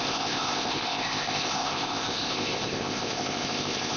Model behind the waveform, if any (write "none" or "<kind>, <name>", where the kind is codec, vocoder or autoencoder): codec, ZipCodec